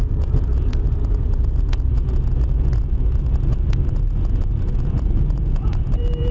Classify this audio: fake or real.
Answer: fake